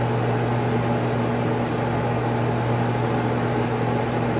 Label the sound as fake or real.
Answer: real